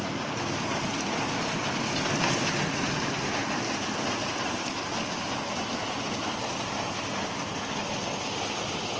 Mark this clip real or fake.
real